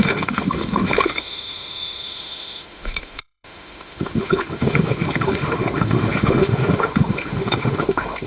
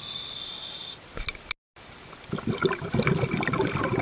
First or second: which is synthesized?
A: first